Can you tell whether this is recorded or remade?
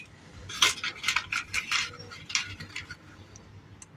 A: recorded